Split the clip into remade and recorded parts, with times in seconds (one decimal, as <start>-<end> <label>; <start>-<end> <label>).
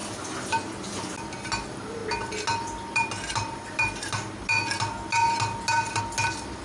0.0-6.6 recorded